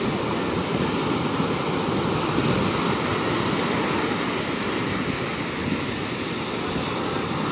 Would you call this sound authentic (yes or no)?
yes